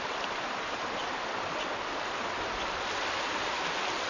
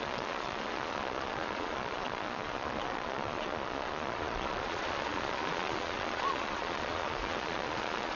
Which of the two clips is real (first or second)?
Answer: first